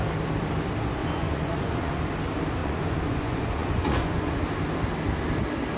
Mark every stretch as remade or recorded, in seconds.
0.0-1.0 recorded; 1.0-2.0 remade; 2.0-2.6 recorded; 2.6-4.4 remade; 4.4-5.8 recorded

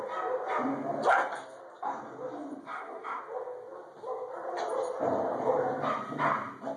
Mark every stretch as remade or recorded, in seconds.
0.0-2.6 recorded; 2.6-3.2 remade; 3.2-6.8 recorded